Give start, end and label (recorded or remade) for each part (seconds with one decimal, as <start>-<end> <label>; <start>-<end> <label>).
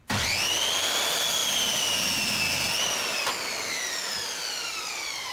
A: 0.0-5.3 recorded